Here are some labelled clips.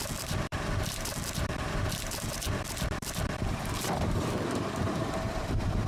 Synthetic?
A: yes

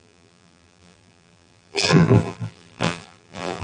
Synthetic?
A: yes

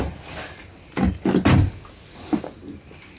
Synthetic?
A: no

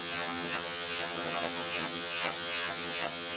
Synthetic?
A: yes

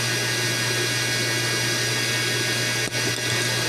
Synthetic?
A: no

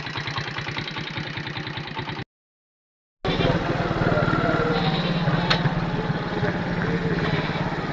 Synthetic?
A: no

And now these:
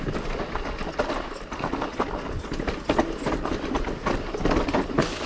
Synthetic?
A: no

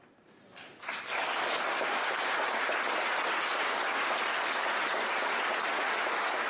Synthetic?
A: no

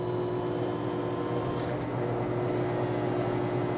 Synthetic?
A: no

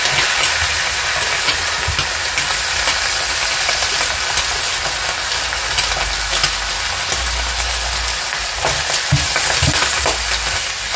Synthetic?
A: no